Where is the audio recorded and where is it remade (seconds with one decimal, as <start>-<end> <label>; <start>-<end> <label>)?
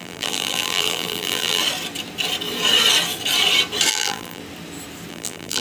0.0-1.6 remade; 1.6-3.9 recorded; 3.9-4.4 remade; 4.4-5.1 recorded; 5.1-5.6 remade